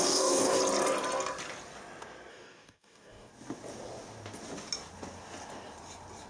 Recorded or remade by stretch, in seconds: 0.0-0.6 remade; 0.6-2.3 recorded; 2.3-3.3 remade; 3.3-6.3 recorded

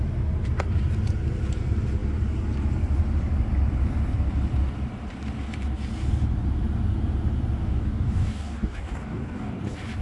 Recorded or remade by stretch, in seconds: 0.0-7.6 recorded; 7.6-9.6 remade; 9.6-10.0 recorded

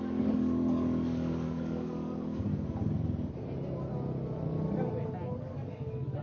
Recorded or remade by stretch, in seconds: 0.0-2.5 remade; 2.5-5.4 recorded; 5.4-6.2 remade

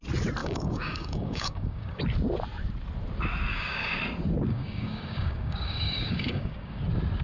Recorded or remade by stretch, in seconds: 0.0-0.4 recorded; 0.4-2.0 remade; 2.0-3.5 recorded; 3.5-4.0 remade; 4.0-4.5 recorded; 4.5-6.8 remade; 6.8-7.2 recorded

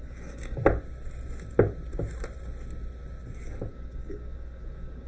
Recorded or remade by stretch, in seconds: 0.0-0.6 remade; 0.6-3.7 recorded; 3.7-5.1 remade

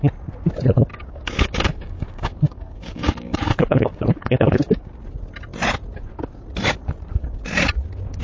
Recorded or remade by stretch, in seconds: 0.0-0.9 recorded; 0.9-4.9 remade; 4.9-8.2 recorded

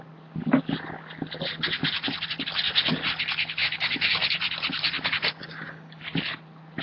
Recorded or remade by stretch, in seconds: 0.0-5.4 recorded; 5.4-6.0 remade; 6.0-6.8 recorded

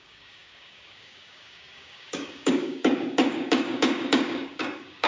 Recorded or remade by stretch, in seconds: 0.0-5.1 remade